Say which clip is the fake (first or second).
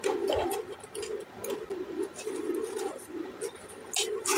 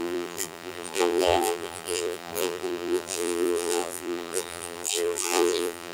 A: second